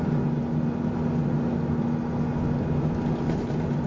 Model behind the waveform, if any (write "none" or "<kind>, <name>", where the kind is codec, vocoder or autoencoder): none